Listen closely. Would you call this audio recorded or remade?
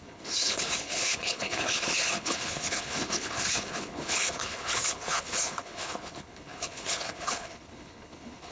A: remade